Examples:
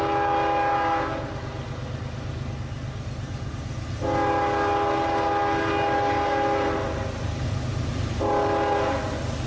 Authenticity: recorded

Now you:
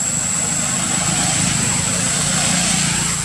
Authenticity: recorded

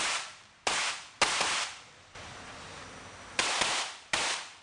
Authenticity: recorded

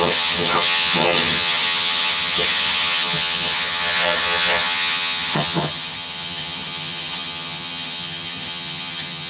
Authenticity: remade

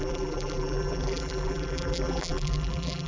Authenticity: remade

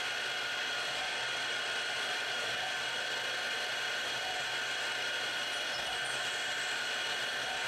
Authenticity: recorded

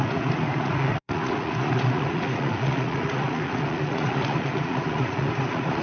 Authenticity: remade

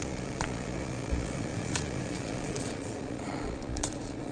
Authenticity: remade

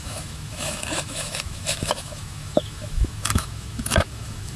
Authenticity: remade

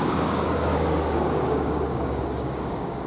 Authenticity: remade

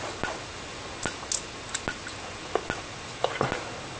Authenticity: recorded